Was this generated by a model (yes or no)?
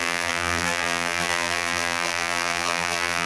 yes